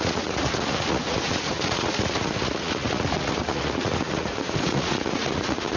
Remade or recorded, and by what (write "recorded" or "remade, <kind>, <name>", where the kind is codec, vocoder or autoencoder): remade, vocoder, Vocos